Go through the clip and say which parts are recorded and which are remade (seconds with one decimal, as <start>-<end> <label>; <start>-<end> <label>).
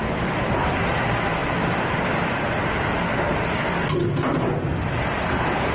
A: 0.0-0.8 remade; 0.8-1.4 recorded; 1.4-2.9 remade; 2.9-5.7 recorded